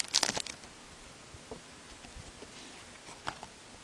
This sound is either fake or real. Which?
real